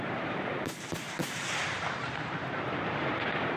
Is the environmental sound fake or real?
fake